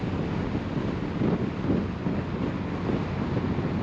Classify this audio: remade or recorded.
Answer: recorded